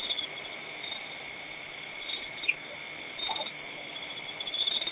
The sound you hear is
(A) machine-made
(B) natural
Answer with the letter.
A